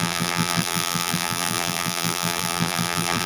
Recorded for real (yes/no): no